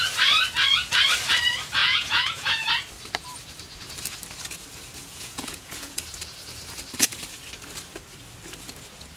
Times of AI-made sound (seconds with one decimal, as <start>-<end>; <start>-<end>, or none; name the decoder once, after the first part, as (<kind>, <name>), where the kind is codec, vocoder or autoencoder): 1.8-2.7 (vocoder, Vocos); 5.0-6.0